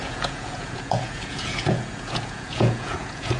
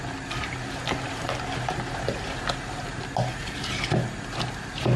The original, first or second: second